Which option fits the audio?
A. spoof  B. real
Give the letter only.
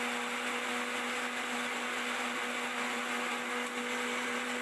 B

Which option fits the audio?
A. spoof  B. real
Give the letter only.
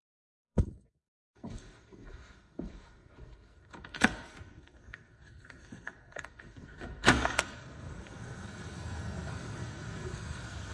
A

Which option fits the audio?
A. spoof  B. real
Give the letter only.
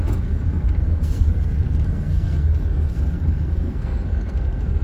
A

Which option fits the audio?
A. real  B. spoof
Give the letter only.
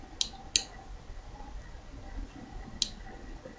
A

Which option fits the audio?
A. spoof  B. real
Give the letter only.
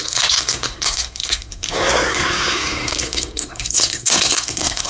A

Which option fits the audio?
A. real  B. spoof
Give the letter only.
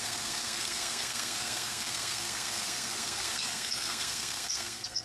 B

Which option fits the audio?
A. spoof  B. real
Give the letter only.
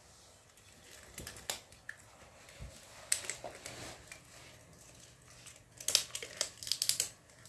B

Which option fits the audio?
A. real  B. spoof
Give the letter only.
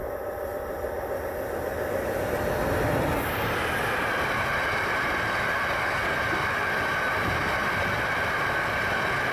A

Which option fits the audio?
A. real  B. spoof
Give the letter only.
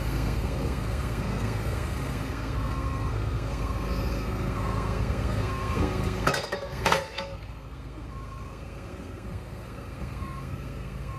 B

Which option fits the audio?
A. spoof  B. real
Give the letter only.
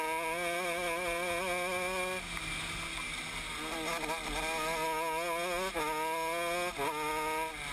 B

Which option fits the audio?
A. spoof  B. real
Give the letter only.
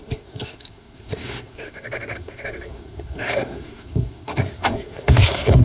A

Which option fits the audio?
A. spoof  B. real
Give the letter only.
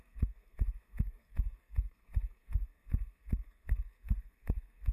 A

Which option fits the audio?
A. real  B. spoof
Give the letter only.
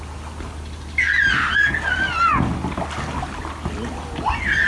A